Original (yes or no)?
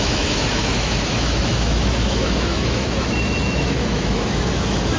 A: no